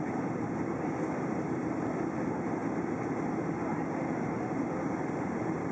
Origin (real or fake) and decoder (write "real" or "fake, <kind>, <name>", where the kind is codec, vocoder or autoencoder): fake, vocoder, BigVGAN v2